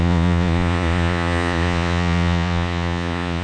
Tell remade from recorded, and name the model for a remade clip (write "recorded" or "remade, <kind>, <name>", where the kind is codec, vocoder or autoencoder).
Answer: remade, vocoder, Vocos